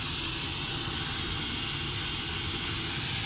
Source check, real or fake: real